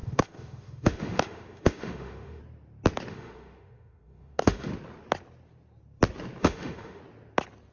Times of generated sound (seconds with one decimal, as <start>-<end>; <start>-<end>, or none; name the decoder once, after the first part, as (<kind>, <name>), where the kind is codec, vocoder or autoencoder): 0.0-2.4 (autoencoder, DAC-VAE); 3.1-4.7; 6.4-7.0